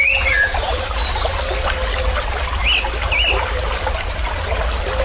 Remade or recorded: recorded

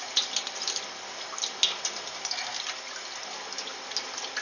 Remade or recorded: recorded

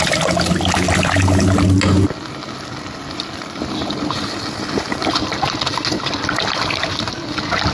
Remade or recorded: recorded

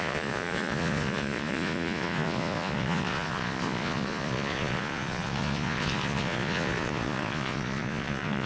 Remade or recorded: remade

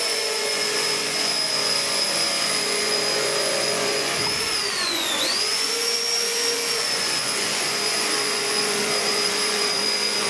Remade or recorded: remade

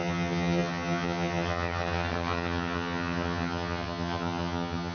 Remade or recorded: remade